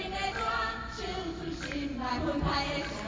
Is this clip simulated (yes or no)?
no